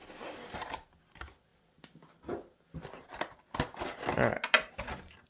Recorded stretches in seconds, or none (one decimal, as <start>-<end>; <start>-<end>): 0.0-5.3